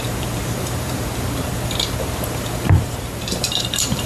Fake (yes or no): yes